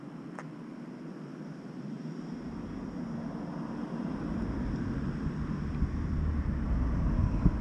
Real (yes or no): yes